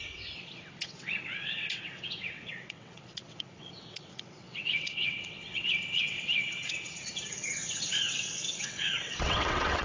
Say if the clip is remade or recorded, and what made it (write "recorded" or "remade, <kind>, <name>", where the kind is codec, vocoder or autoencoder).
remade, vocoder, WaveNeXt